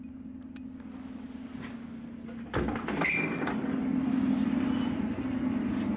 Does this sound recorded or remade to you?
recorded